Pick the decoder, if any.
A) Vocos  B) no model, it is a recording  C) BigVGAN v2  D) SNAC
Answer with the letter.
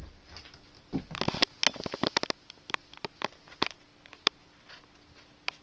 B